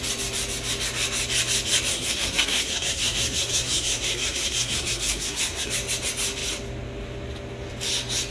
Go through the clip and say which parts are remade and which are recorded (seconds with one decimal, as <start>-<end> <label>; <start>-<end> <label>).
0.0-1.9 recorded; 1.9-5.7 remade; 5.7-8.3 recorded